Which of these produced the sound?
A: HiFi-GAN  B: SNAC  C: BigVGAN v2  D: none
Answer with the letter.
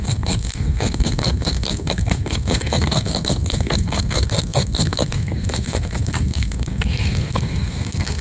B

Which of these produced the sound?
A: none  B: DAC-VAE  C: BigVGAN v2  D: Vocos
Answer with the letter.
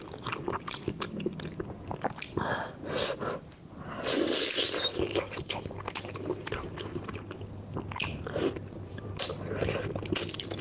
A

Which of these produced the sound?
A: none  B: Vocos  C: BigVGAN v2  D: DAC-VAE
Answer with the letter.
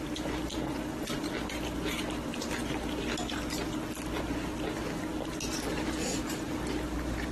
A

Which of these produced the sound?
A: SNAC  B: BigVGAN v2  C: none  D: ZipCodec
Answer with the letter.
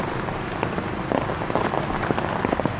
C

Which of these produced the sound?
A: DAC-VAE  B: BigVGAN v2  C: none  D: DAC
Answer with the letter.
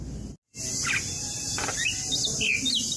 C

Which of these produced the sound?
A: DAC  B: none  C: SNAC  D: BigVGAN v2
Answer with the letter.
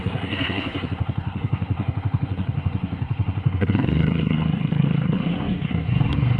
C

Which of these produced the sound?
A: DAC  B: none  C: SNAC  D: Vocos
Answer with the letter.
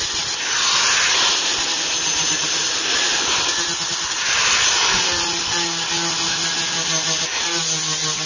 B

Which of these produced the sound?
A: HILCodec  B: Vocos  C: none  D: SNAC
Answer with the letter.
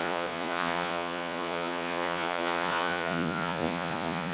B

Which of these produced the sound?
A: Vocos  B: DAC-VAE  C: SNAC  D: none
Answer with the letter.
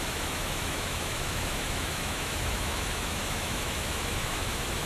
B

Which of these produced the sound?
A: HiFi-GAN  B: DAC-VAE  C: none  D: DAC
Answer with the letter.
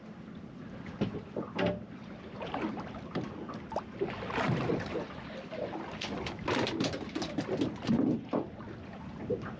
C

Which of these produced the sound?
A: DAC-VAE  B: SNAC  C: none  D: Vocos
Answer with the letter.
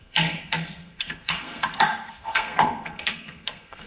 B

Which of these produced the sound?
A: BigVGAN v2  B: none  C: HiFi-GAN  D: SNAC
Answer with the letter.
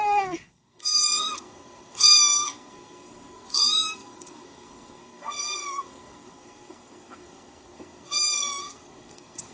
D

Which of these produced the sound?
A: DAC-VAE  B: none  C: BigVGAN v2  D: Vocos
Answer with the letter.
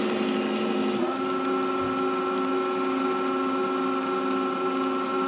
B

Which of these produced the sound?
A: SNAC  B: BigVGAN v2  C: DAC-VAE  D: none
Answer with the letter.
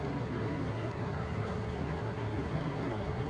A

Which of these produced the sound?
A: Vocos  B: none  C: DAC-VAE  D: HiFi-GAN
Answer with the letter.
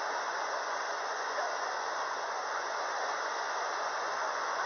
A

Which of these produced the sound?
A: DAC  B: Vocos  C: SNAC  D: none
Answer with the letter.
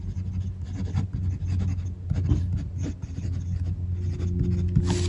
D